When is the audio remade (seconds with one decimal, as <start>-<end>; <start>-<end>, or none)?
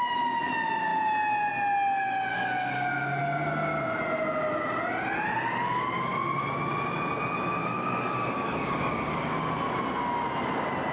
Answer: 2.3-3.2; 7.6-9.4